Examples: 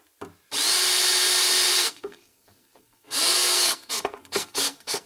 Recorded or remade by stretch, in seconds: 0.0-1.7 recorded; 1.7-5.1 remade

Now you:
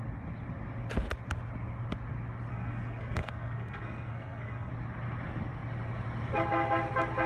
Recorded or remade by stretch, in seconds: 0.0-2.5 recorded; 2.5-4.7 remade; 4.7-7.3 recorded

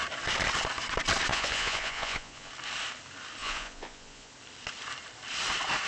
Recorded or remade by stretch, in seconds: 0.0-1.3 recorded; 1.3-2.5 remade; 2.5-3.4 recorded; 3.4-4.3 remade; 4.3-5.9 recorded

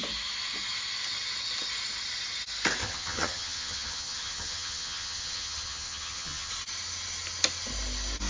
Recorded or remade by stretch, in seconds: 0.0-2.8 recorded; 2.8-6.5 remade; 6.5-8.3 recorded

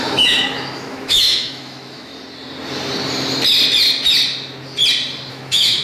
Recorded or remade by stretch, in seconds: 0.0-2.1 remade; 2.1-5.3 recorded; 5.3-5.8 remade